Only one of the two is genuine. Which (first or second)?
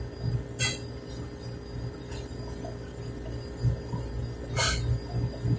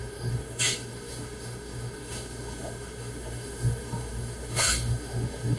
first